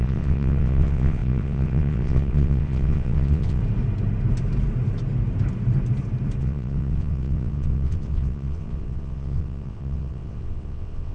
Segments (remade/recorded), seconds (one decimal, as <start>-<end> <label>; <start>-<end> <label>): 0.0-3.6 remade; 3.6-6.4 recorded; 6.4-11.1 remade